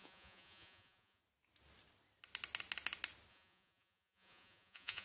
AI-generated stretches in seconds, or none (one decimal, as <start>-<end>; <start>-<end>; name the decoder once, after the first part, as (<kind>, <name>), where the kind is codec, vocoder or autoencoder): 0.0-1.2 (vocoder, Vocos); 3.3-5.0